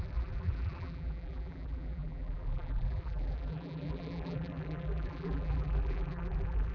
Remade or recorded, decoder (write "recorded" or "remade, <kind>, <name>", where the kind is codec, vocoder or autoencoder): remade, vocoder, BigVGAN v2